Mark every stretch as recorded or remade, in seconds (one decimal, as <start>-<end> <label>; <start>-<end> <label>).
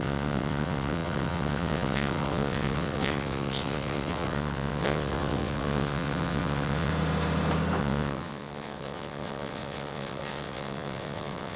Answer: 0.0-6.9 remade; 6.9-7.8 recorded; 7.8-11.6 remade